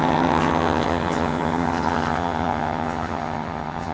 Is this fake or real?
fake